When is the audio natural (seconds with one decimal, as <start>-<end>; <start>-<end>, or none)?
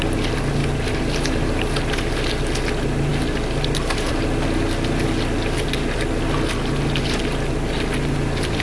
0.0-8.6